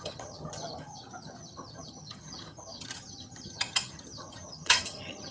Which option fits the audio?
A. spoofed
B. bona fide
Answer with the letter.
A